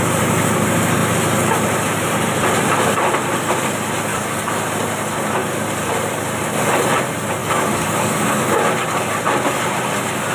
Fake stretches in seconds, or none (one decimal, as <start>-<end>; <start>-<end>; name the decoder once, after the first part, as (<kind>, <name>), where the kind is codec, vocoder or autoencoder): 4.1-4.6 (codec, DAC); 7.4-8.4